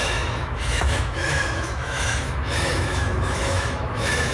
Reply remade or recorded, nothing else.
remade